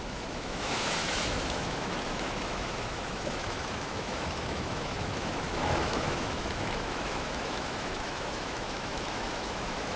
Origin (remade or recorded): remade